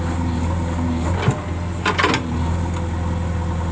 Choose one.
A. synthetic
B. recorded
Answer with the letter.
B